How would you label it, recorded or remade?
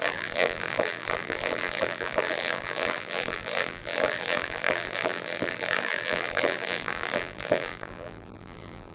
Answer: remade